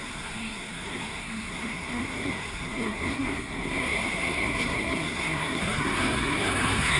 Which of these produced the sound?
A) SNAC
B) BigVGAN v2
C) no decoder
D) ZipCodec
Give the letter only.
A